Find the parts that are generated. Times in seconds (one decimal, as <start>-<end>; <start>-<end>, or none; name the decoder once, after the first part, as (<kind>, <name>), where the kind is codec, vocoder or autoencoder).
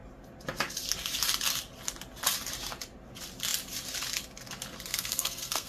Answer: 4.9-5.7 (codec, SNAC)